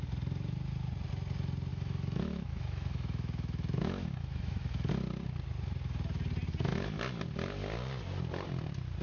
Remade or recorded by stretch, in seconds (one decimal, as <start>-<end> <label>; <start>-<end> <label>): 0.0-1.7 recorded; 1.7-4.9 remade; 4.9-9.0 recorded